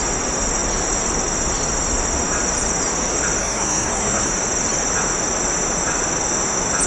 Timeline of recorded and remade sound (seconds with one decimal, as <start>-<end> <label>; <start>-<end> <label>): 0.0-3.4 recorded; 3.4-4.3 remade; 4.3-6.9 recorded